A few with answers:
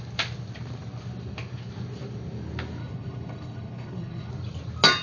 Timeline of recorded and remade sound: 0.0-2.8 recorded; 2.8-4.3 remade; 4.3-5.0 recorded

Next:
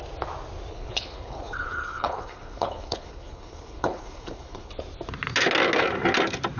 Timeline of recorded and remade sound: 0.0-0.7 recorded; 0.7-4.7 remade; 4.7-6.6 recorded

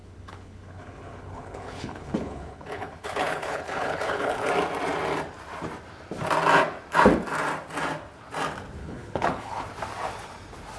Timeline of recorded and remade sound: 0.0-4.5 remade; 4.5-8.8 recorded; 8.8-9.6 remade; 9.6-10.8 recorded

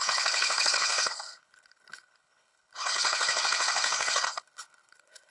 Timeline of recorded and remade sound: 0.0-5.3 remade